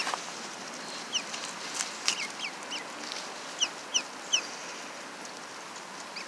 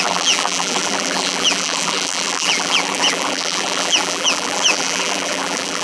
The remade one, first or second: second